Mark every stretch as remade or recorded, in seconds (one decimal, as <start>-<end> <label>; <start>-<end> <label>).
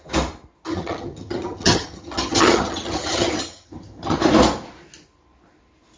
0.0-0.7 recorded; 0.7-4.2 remade; 4.2-6.0 recorded